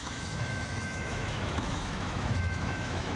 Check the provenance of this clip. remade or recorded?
remade